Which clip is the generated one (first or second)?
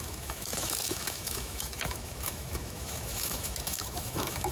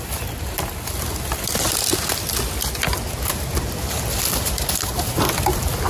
first